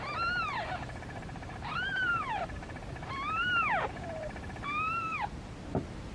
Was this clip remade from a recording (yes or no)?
yes